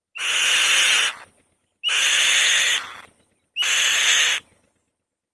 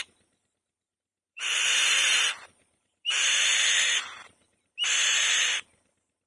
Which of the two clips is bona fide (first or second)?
first